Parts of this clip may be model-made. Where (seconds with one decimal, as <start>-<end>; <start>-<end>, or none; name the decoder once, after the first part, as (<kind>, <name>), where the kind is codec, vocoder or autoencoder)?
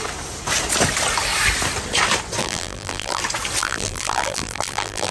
2.4-3.2 (vocoder, BigVGAN v2); 3.6-5.1